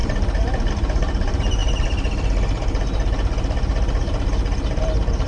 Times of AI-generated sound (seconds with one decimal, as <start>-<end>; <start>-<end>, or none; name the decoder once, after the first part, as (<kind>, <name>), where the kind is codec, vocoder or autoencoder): 0.0-1.6 (vocoder, BigVGAN v2); 4.8-5.3